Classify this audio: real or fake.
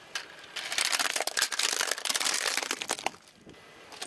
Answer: real